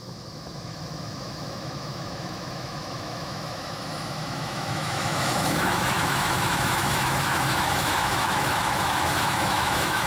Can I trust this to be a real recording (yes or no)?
no